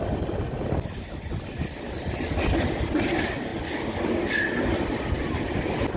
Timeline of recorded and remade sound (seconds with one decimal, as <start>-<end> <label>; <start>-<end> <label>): 0.0-6.0 recorded